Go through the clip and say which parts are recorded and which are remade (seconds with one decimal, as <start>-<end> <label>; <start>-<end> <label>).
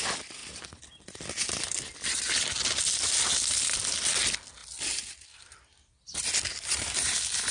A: 0.0-7.5 recorded